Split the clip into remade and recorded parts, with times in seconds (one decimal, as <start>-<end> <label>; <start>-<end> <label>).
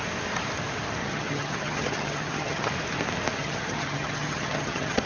0.0-1.0 recorded; 1.0-2.7 remade; 2.7-3.4 recorded; 3.4-5.1 remade